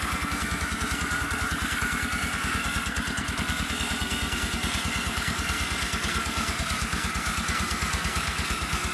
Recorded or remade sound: remade